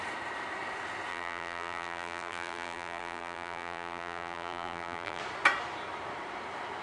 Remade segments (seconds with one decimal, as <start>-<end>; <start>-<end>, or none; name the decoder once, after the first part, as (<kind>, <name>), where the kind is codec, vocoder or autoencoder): 1.1-5.2 (vocoder, BigVGAN v2)